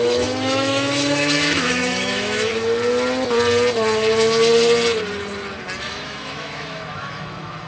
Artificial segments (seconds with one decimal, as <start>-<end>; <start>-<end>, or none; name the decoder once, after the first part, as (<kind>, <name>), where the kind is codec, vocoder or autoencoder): 0.0-2.5 (autoencoder, DAC-VAE); 5.8-7.7